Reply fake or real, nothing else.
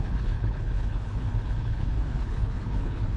fake